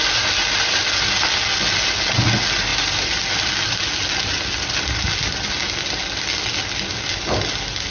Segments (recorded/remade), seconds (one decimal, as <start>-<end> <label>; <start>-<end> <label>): 0.0-2.7 recorded; 2.7-3.5 remade; 3.5-7.9 recorded